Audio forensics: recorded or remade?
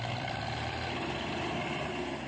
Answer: remade